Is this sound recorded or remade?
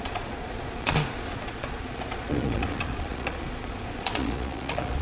remade